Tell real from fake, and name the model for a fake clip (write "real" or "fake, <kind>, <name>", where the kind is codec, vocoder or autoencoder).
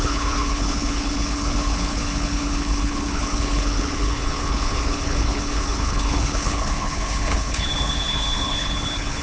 fake, codec, HILCodec